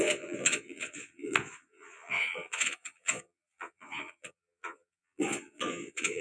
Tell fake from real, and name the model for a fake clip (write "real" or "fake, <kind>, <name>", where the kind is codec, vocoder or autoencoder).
fake, vocoder, Vocos